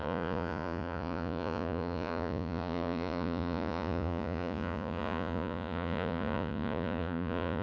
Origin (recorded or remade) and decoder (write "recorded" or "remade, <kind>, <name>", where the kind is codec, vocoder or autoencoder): remade, vocoder, Vocos